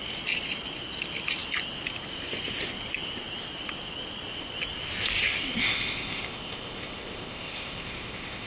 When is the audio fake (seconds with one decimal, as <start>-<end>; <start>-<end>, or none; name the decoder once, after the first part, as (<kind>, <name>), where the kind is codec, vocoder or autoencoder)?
5.6-8.5 (codec, ZipCodec)